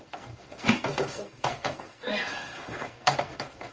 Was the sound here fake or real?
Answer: fake